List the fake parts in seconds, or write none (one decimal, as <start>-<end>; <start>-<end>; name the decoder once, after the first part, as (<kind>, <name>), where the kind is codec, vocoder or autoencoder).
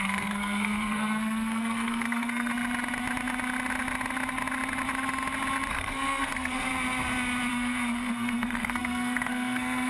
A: 0.0-2.5 (codec, SNAC); 5.7-6.7; 7.5-9.9